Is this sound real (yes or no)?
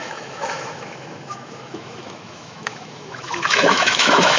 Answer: no